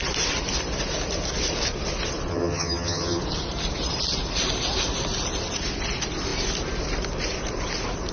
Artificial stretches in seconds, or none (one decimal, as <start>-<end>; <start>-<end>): 2.3-3.2